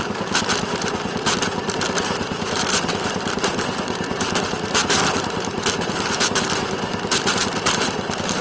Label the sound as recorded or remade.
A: remade